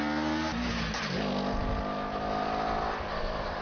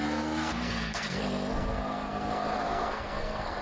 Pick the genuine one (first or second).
first